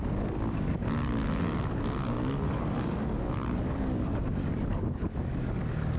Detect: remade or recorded remade